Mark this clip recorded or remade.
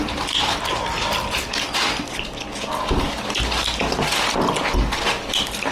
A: recorded